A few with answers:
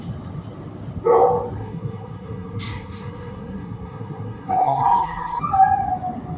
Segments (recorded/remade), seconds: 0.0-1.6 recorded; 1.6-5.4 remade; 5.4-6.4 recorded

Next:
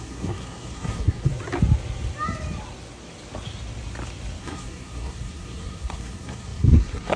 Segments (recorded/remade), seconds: 0.0-1.3 remade; 1.3-4.4 recorded; 4.4-7.2 remade

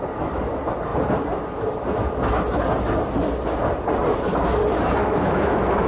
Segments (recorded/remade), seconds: 0.0-5.0 recorded; 5.0-5.9 remade

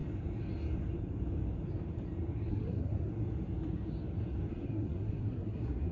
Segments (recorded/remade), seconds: 0.0-2.5 recorded; 2.5-3.1 remade; 3.1-4.5 recorded; 4.5-5.9 remade

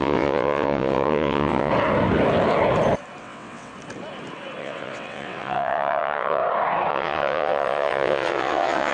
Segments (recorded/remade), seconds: 0.0-1.7 remade; 1.7-3.2 recorded; 3.2-3.7 remade; 3.7-4.6 recorded; 4.6-6.4 remade; 6.4-6.9 recorded; 6.9-8.9 remade

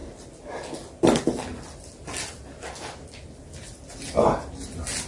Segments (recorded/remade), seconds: 0.0-5.1 recorded

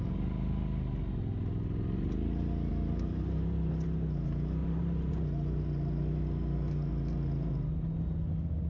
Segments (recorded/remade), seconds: 0.0-2.7 recorded; 2.7-3.7 remade; 3.7-4.6 recorded; 4.6-5.1 remade; 5.1-8.7 recorded

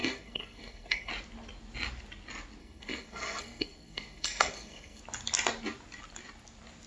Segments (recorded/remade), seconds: 0.0-1.1 remade; 1.1-2.6 recorded; 2.6-5.0 remade; 5.0-6.9 recorded